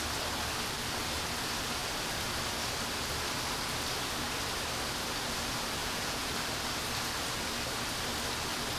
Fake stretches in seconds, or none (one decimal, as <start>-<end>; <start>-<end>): 5.8-6.3